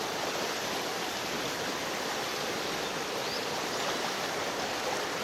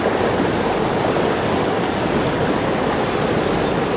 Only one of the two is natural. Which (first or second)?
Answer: second